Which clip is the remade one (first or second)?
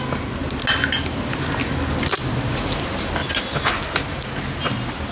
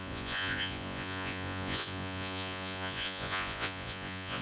second